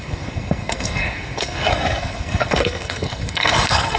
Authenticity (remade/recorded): remade